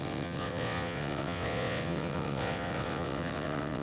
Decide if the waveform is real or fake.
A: fake